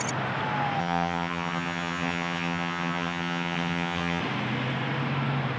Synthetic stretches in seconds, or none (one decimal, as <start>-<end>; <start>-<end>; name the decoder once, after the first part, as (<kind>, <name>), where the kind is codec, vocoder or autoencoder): 0.8-4.2 (vocoder, HiFi-GAN)